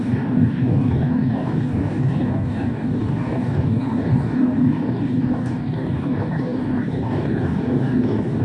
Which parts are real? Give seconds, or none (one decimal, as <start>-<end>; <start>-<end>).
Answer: none